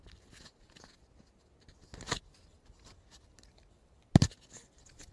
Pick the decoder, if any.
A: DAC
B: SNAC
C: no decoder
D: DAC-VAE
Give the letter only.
C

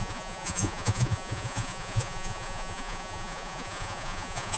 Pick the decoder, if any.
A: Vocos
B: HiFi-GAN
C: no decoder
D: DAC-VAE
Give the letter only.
A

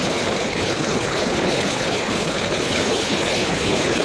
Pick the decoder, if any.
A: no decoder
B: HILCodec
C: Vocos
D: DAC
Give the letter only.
B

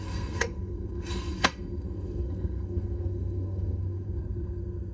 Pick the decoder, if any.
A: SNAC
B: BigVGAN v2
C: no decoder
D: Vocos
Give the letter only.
A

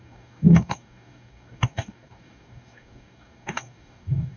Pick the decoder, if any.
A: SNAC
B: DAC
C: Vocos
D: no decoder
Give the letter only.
B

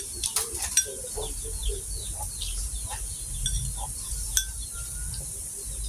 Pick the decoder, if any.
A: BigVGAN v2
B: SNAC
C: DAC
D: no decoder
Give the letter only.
A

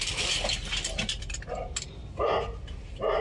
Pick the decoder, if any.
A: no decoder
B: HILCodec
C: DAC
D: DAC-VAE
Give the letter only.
A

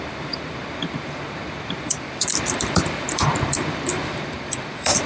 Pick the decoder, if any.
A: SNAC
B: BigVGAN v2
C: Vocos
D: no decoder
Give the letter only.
B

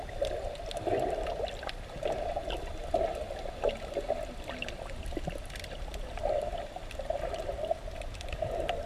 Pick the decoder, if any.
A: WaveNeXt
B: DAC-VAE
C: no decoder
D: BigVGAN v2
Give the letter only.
C